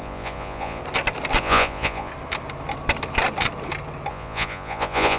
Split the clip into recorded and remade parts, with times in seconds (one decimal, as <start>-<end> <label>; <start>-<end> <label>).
0.0-0.8 remade; 0.8-1.4 recorded; 1.4-2.1 remade; 2.1-4.1 recorded; 4.1-5.2 remade